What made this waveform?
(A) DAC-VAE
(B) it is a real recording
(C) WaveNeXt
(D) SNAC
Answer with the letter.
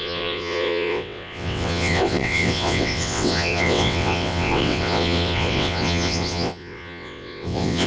C